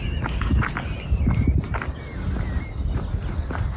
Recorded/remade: recorded